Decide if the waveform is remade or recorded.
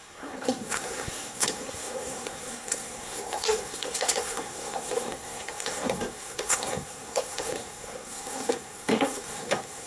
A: remade